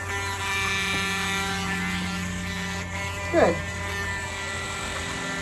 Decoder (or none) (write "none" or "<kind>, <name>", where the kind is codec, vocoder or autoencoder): none